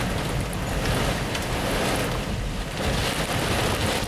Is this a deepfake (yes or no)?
no